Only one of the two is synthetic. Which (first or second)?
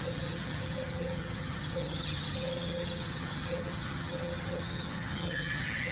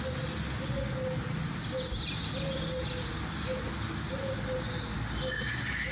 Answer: first